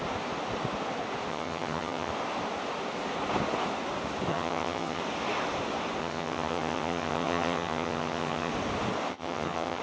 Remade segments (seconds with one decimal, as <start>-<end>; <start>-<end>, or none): 1.3-2.1; 4.3-5.0; 6.0-8.5; 9.1-9.8